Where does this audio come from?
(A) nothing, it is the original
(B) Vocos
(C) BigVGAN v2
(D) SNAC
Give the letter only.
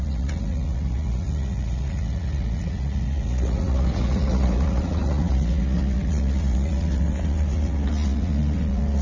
B